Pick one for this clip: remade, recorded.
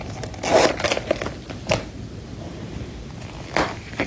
recorded